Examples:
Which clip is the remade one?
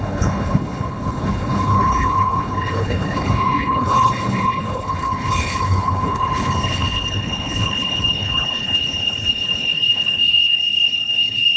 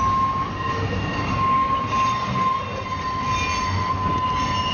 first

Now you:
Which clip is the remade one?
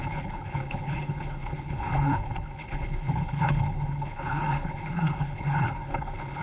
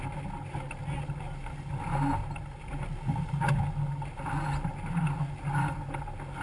first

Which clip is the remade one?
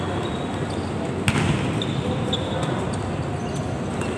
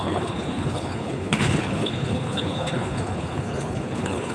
second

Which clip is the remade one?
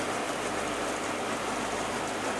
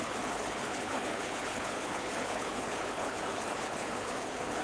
second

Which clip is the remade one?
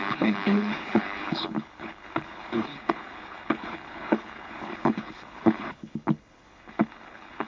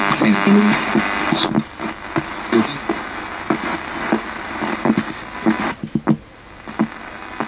first